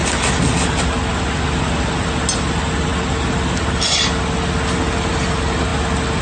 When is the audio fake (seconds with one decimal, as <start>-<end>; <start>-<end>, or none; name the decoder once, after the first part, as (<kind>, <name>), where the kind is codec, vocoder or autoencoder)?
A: none

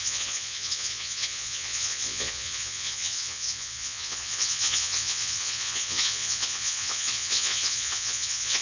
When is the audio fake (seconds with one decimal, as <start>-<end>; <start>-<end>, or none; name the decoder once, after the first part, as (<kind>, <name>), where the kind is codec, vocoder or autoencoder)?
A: 0.0-8.6 (vocoder, Vocos)